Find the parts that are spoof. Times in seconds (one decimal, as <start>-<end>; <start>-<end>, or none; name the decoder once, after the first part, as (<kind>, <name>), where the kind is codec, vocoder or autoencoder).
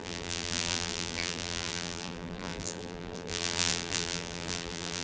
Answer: 0.0-5.0 (vocoder, BigVGAN v2)